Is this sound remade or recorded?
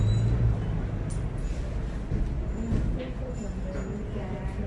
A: recorded